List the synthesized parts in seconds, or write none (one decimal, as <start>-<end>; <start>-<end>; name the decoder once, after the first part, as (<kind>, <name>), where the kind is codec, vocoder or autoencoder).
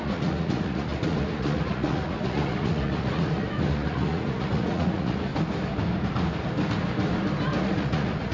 0.0-5.3 (vocoder, Vocos); 7.6-8.3